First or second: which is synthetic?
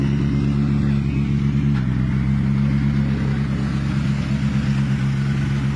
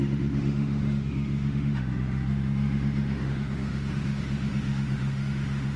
second